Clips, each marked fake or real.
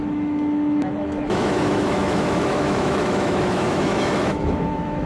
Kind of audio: fake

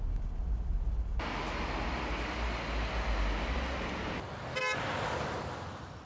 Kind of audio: real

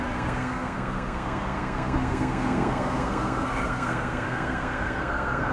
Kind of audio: fake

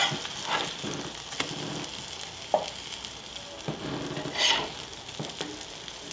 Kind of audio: real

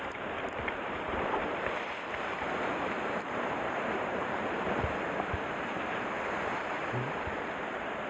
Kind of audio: fake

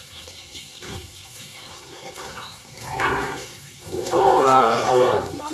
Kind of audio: fake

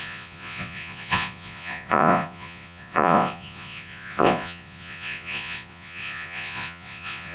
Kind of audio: fake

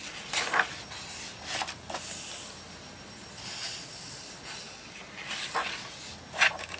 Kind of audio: real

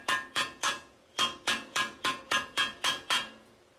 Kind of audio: fake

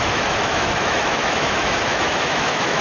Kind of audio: fake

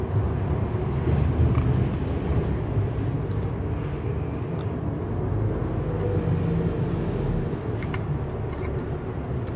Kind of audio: real